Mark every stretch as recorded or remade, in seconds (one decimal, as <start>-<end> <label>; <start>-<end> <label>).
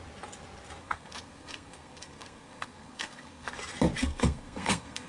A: 0.0-0.8 recorded; 0.8-3.5 remade; 3.5-4.0 recorded; 4.0-5.1 remade